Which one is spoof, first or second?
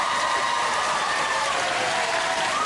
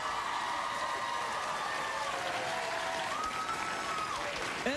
first